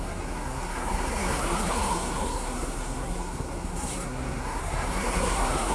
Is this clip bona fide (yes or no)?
no